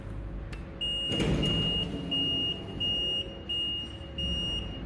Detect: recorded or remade recorded